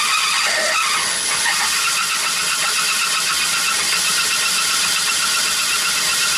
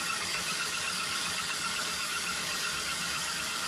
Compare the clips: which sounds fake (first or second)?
second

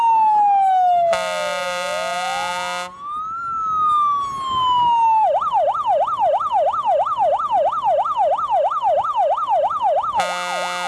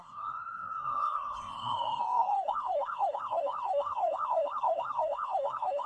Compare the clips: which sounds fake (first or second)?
second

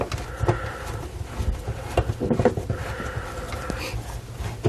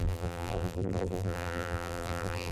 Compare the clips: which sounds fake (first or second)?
second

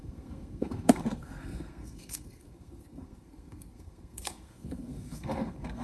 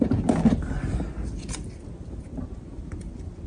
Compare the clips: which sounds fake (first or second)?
first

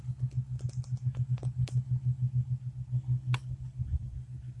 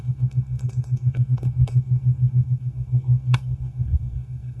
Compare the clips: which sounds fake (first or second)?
second